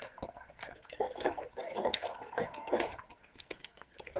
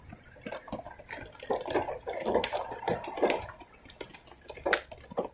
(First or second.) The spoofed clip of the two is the first